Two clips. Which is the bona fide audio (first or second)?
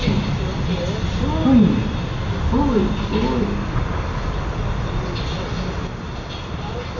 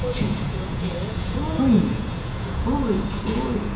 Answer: first